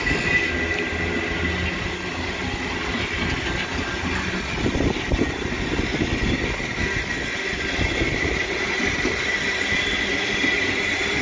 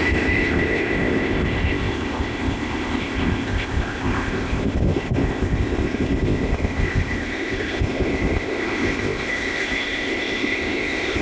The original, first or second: first